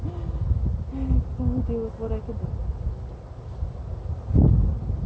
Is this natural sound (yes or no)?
yes